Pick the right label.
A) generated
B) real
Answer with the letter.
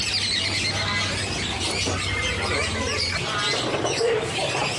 B